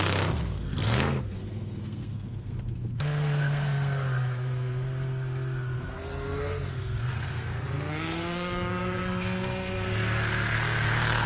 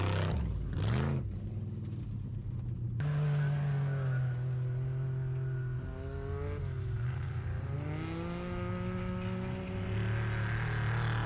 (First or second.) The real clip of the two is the second